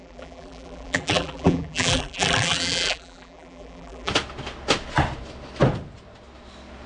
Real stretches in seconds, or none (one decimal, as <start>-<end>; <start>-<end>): 4.1-6.9